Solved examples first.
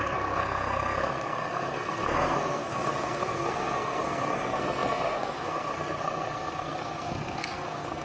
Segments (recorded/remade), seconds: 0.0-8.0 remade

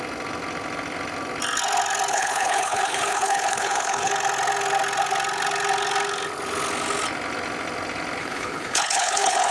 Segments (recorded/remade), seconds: 0.0-2.1 recorded; 2.1-4.1 remade; 4.1-8.2 recorded; 8.2-9.5 remade

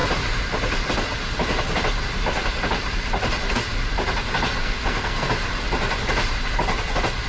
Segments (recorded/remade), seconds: 0.0-4.6 recorded; 4.6-5.3 remade; 5.3-7.3 recorded